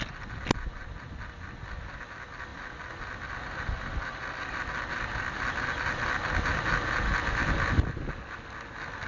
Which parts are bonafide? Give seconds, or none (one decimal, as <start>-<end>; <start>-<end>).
0.0-9.1

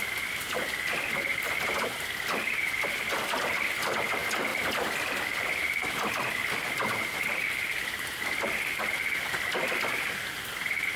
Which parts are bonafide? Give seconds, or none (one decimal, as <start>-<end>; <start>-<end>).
0.0-11.0

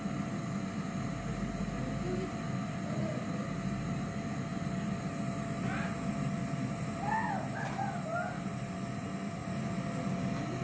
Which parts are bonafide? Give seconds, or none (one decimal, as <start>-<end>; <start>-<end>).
0.0-10.6

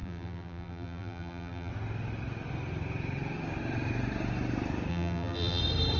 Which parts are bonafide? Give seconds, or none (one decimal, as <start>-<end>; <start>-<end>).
1.7-4.9; 5.6-6.0